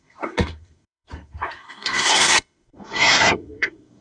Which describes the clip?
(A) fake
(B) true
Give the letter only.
A